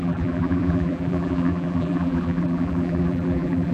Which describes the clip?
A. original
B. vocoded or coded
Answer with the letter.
B